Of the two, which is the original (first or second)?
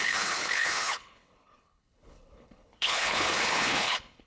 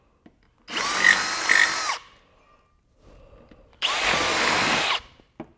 second